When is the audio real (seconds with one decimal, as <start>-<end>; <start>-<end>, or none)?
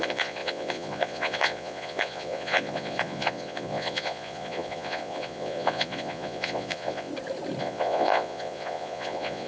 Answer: 7.1-7.6